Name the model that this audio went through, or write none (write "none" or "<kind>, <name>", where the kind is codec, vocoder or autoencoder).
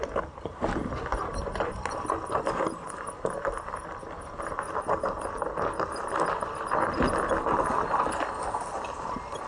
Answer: none